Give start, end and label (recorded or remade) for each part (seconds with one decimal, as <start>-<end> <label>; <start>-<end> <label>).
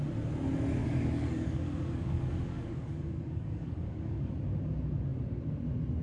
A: 0.0-0.8 recorded; 0.8-4.3 remade; 4.3-6.0 recorded